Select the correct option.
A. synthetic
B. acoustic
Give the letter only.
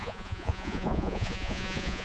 A